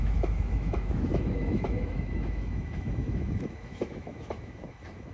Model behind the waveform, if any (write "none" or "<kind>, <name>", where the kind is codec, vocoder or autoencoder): autoencoder, DAC-VAE